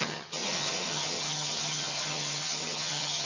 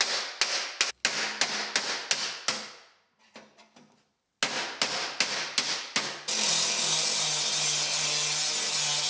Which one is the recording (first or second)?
second